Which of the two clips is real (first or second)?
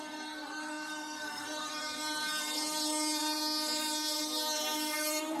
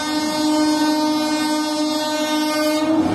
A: second